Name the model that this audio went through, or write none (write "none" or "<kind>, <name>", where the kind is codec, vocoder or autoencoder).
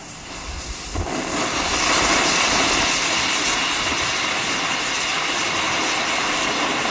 none